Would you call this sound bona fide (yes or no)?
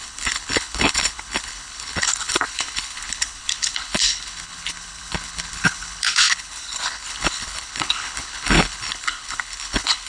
no